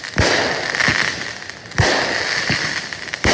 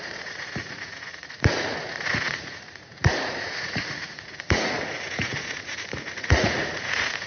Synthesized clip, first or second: second